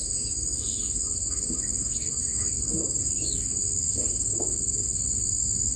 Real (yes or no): no